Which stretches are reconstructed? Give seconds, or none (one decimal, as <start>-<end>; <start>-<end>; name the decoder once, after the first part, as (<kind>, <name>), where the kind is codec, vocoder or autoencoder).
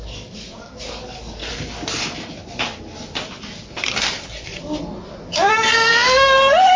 0.0-1.4 (codec, DAC); 5.5-5.9